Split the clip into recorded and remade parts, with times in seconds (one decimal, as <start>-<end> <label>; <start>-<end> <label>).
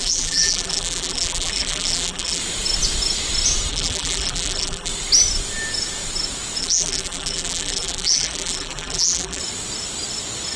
0.0-2.4 remade; 2.4-3.7 recorded; 3.7-4.9 remade; 4.9-6.6 recorded; 6.6-9.4 remade; 9.4-10.6 recorded